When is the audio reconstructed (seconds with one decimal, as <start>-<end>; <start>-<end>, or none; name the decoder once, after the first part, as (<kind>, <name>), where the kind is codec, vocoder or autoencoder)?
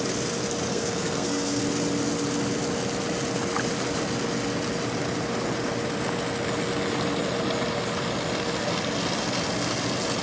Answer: 0.7-1.6 (codec, SNAC)